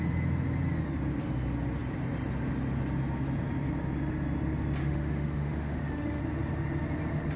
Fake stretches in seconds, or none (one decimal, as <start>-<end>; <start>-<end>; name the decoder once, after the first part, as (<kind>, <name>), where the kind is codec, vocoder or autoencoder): 4.8-6.2 (autoencoder, DAC-VAE)